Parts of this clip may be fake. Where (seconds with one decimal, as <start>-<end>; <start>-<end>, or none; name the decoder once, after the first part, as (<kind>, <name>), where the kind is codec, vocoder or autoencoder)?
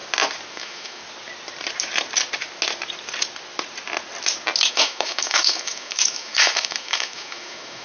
0.5-1.0 (autoencoder, DAC-VAE); 4.7-7.8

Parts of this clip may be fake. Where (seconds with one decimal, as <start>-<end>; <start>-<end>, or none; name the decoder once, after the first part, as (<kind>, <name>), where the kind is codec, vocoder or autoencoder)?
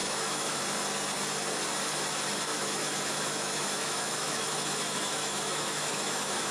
0.0-0.6 (autoencoder, DAC-VAE); 2.5-6.5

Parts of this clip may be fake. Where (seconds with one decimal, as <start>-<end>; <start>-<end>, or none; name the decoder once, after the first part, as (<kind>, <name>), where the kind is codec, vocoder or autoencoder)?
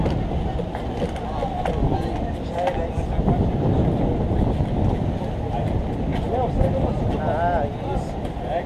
none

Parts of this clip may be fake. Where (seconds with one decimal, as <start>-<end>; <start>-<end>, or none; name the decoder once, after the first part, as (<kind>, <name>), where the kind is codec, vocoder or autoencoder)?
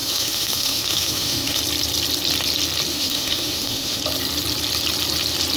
0.0-1.6 (autoencoder, DAC-VAE); 2.9-4.0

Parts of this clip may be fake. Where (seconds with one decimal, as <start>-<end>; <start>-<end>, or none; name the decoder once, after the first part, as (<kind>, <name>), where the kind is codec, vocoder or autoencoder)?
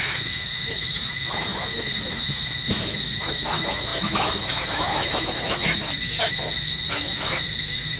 0.0-8.0 (autoencoder, DAC-VAE)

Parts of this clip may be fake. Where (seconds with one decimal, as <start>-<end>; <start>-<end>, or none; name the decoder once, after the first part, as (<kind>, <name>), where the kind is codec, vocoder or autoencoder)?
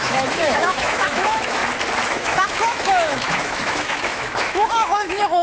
0.0-1.6 (autoencoder, DAC-VAE); 2.1-5.4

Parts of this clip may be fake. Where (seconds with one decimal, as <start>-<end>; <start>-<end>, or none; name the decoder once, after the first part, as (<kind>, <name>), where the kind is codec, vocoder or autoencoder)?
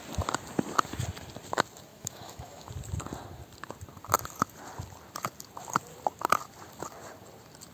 1.9-2.7 (autoencoder, DAC-VAE)